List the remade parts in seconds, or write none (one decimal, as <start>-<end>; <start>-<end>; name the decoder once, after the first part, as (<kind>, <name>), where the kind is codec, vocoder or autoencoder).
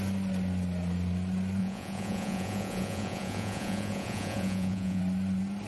1.6-5.0 (vocoder, Vocos)